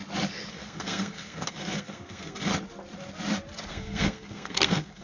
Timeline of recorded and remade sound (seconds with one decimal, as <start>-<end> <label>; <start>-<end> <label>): 0.0-0.5 recorded; 0.5-2.5 remade; 2.5-3.7 recorded; 3.7-5.0 remade

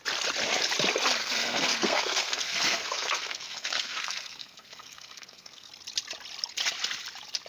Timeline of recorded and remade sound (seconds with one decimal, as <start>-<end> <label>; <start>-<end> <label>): 0.0-1.2 recorded; 1.2-5.7 remade; 5.7-7.5 recorded

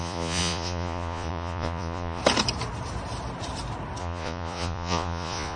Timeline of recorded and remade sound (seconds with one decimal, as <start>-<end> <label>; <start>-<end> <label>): 0.0-2.2 remade; 2.2-4.0 recorded; 4.0-5.6 remade

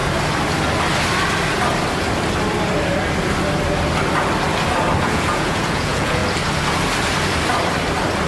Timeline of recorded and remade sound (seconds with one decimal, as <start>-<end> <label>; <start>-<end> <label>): 0.0-5.0 recorded; 5.0-6.2 remade; 6.2-8.3 recorded

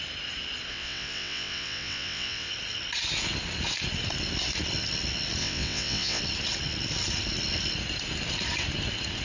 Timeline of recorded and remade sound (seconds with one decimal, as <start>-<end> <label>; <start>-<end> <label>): 0.0-0.7 recorded; 0.7-2.5 remade; 2.5-5.4 recorded; 5.4-6.2 remade; 6.2-9.2 recorded

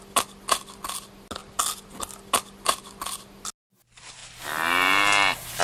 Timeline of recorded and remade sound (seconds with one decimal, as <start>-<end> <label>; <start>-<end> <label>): 0.0-5.6 recorded

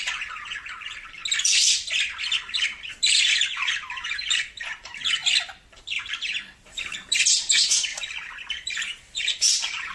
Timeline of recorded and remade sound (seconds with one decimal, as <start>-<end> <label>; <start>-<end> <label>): 0.0-1.2 remade; 1.2-2.4 recorded; 2.4-5.2 remade; 5.2-5.7 recorded; 5.7-9.9 remade